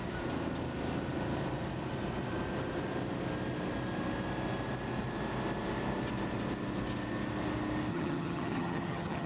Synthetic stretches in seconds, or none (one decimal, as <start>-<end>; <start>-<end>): 7.9-9.3